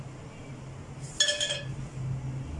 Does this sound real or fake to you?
real